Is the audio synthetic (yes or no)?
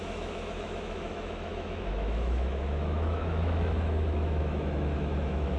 yes